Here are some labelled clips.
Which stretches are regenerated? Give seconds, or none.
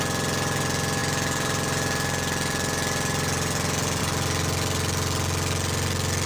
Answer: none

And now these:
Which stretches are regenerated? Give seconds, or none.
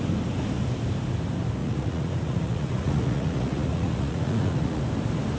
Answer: 1.6-4.8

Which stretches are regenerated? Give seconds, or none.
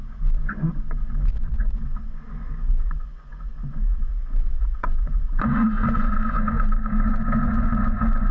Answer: 0.0-8.3